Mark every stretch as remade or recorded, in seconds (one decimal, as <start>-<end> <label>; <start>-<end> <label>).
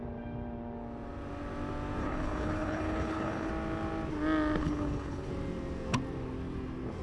0.0-2.0 recorded; 2.0-3.5 remade; 3.5-4.6 recorded; 4.6-5.3 remade; 5.3-7.0 recorded